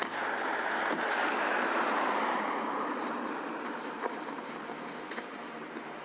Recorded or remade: remade